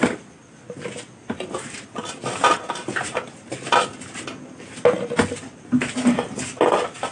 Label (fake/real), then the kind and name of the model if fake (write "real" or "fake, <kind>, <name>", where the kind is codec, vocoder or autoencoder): real